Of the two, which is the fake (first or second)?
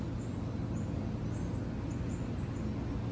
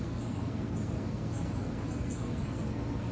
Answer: second